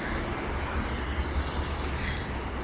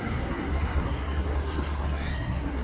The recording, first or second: first